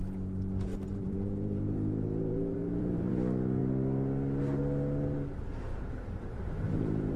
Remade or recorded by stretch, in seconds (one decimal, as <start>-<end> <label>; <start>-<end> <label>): 0.0-0.7 recorded; 0.7-3.1 remade; 3.1-5.7 recorded; 5.7-7.2 remade

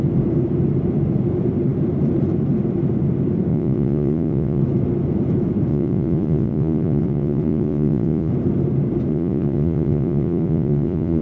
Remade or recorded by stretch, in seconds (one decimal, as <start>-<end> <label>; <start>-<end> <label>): 0.0-3.5 recorded; 3.5-4.6 remade; 4.6-5.7 recorded; 5.7-8.3 remade; 8.3-9.1 recorded; 9.1-11.2 remade

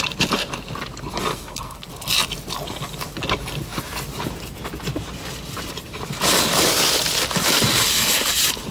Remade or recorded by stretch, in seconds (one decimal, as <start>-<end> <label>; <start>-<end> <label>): 0.0-1.3 recorded; 1.3-1.9 remade; 1.9-8.7 recorded

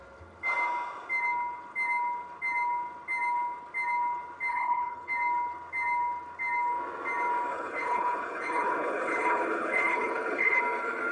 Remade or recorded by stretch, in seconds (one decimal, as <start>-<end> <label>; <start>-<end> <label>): 0.0-4.5 recorded; 4.5-5.1 remade; 5.1-7.5 recorded; 7.5-10.6 remade; 10.6-11.1 recorded

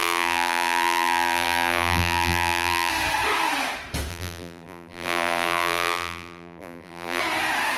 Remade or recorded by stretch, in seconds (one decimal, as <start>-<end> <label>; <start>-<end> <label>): 0.0-2.9 remade; 2.9-4.1 recorded; 4.1-7.2 remade; 7.2-7.8 recorded

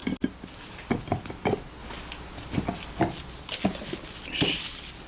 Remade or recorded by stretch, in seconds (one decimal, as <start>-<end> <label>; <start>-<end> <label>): 0.0-5.1 recorded